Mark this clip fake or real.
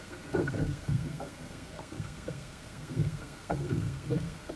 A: fake